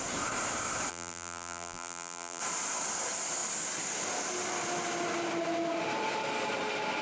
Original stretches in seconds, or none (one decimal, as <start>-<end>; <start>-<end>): 0.0-0.9; 2.4-7.0